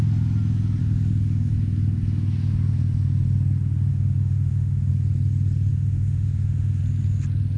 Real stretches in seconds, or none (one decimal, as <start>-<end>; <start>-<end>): 0.0-0.8; 1.5-3.9; 4.9-5.7; 6.8-7.6